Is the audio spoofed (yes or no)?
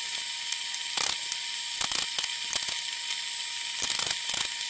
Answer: no